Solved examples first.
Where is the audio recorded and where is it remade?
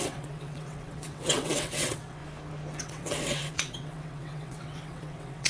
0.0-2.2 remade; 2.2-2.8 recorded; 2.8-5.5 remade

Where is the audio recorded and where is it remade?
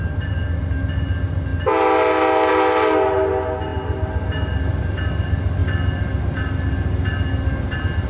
0.0-8.1 recorded